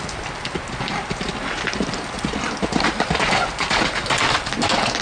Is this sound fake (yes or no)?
no